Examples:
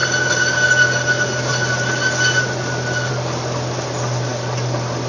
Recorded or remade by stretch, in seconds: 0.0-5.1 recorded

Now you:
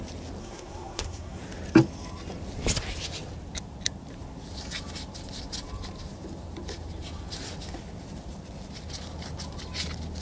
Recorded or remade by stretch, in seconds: 0.0-0.4 recorded; 0.4-1.4 remade; 1.4-10.2 recorded

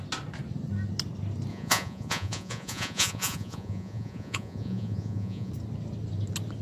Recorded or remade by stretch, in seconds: 0.0-1.5 recorded; 1.5-5.5 remade; 5.5-6.6 recorded